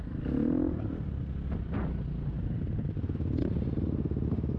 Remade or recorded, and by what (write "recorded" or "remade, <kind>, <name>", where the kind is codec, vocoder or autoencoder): recorded